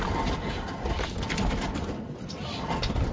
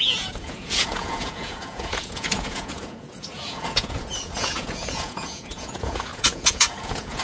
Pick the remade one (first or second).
second